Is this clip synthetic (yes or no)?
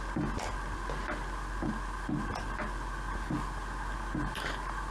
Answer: no